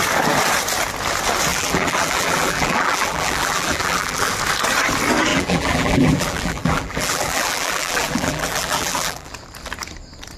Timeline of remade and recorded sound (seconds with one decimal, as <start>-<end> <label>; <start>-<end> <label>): 0.0-1.5 recorded; 1.5-4.3 remade; 4.3-5.3 recorded; 5.3-9.3 remade; 9.3-10.4 recorded